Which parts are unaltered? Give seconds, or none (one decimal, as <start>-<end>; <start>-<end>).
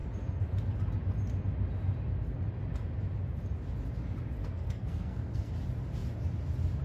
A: 0.0-4.4; 5.5-6.8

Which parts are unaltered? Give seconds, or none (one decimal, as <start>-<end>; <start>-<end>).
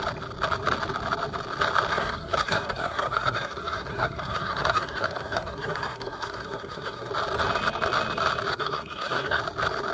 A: 0.0-1.9; 7.1-8.5; 9.4-9.9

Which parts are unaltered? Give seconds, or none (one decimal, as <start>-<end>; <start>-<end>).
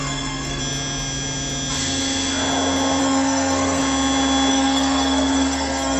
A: 0.6-3.0; 3.8-4.5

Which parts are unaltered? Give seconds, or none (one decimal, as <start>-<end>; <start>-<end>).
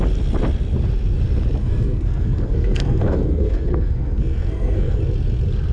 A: 0.0-1.6; 5.0-5.7